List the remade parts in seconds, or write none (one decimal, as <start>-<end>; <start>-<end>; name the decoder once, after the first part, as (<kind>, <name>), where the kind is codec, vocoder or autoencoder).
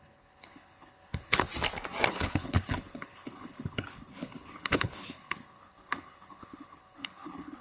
0.0-1.5 (codec, HILCodec); 2.1-7.6